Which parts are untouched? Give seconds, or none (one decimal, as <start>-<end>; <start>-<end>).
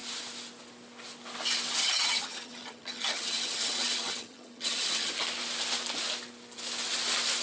0.0-1.8; 5.1-7.4